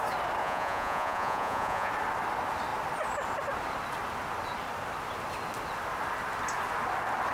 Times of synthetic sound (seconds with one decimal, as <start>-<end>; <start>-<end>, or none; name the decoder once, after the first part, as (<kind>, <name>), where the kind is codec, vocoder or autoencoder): 0.4-1.9 (vocoder, Vocos)